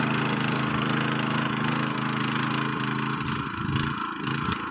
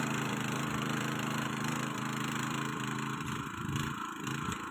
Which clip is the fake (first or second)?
second